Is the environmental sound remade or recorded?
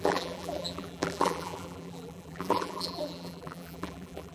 remade